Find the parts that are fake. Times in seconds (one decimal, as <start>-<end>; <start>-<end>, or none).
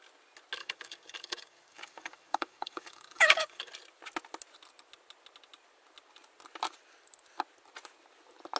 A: 0.6-3.7